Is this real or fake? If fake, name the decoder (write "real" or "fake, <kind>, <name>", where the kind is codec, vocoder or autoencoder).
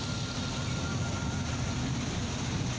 real